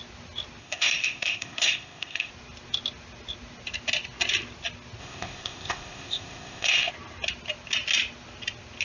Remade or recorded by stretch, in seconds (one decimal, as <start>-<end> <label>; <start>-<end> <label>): 0.0-0.6 recorded; 0.6-2.3 remade; 2.3-5.0 recorded; 5.0-6.9 remade; 6.9-8.8 recorded